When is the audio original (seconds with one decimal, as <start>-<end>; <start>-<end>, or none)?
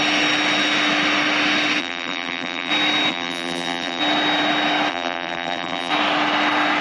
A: 0.0-1.8; 2.7-3.1; 4.0-4.9; 5.9-6.8